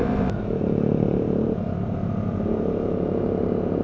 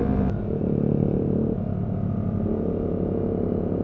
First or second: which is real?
second